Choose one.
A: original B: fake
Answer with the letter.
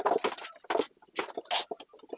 A